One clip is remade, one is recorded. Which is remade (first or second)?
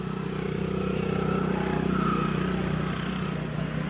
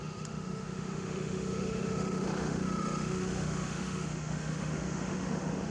second